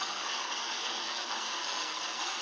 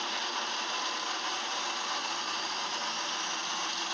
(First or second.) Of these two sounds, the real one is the second